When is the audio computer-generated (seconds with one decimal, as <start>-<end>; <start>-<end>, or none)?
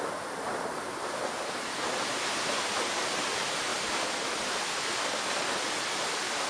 none